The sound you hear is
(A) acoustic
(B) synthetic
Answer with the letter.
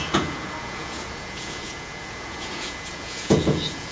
B